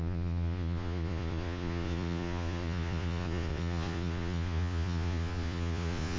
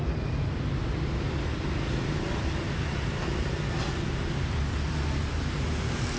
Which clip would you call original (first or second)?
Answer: second